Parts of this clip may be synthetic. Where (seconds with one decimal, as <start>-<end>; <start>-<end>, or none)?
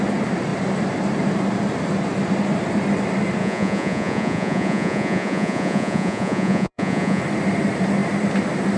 3.4-7.2